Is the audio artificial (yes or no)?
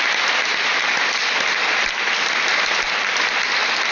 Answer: no